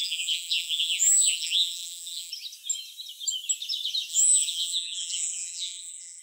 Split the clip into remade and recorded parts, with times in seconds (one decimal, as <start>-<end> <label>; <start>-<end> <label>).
0.0-2.3 remade; 2.3-4.1 recorded; 4.1-6.2 remade